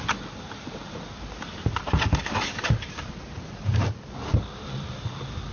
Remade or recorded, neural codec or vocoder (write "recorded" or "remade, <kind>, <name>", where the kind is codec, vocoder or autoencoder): recorded